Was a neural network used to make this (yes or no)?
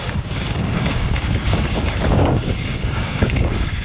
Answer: yes